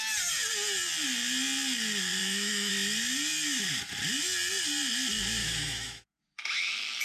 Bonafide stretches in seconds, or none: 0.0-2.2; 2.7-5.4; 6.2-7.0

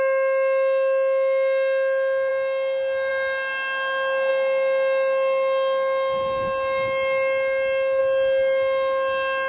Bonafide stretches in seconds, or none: 0.0-9.5

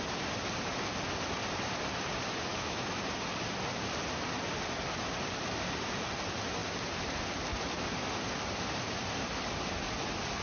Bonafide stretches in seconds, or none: 0.0-2.5; 3.0-10.4

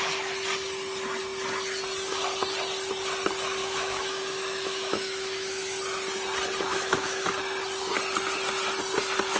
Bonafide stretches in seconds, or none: 0.0-3.6; 5.8-6.7; 7.3-9.4